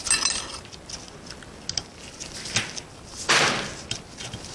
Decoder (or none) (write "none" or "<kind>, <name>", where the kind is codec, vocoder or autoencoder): none